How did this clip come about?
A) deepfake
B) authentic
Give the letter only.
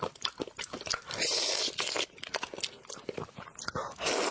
B